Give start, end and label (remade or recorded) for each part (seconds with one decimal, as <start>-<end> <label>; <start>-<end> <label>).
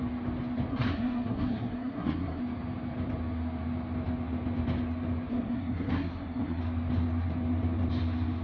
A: 0.0-0.7 recorded; 0.7-2.4 remade; 2.4-5.3 recorded; 5.3-6.6 remade; 6.6-8.4 recorded